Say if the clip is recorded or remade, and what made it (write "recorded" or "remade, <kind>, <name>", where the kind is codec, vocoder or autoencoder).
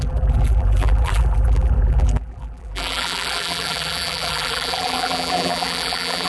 remade, vocoder, BigVGAN v2